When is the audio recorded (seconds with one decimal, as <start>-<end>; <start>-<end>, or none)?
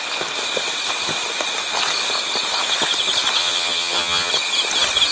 0.0-3.4; 4.3-5.1